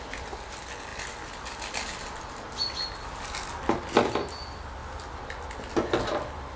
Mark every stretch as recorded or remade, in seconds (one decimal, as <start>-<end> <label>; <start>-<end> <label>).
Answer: 0.0-6.6 recorded